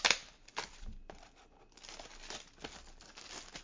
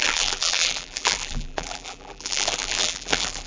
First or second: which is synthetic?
second